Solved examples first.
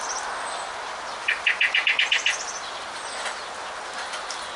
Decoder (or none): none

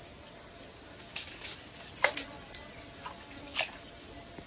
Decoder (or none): none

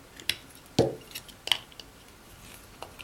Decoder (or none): none